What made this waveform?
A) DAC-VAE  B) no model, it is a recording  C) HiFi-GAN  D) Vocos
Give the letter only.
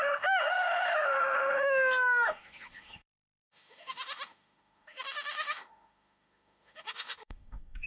A